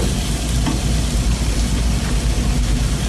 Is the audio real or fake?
real